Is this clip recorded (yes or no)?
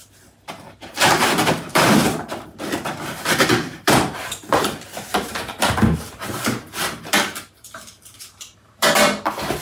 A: no